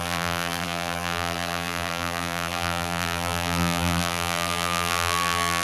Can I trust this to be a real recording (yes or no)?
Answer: no